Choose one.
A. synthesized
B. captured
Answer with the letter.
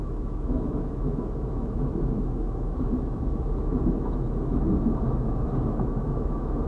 A